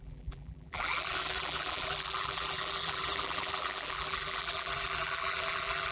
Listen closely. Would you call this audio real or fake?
fake